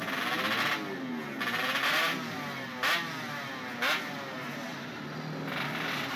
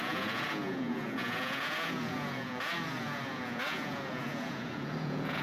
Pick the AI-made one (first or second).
second